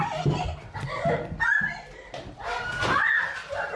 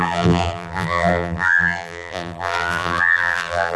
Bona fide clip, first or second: first